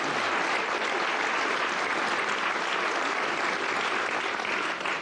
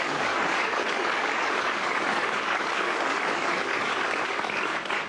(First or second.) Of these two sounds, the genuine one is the first